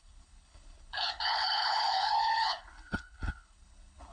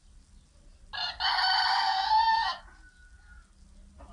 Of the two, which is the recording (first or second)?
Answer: second